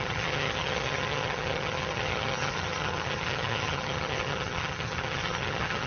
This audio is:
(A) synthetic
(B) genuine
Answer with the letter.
A